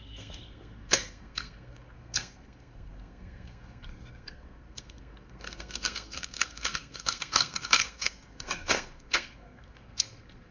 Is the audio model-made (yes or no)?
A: yes